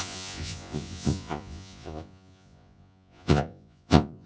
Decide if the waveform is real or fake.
fake